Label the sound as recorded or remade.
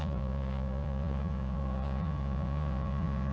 remade